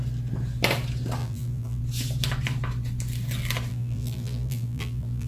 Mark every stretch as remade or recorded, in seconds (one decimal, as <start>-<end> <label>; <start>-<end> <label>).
0.0-1.2 recorded; 1.2-1.8 remade; 1.8-3.7 recorded; 3.7-5.3 remade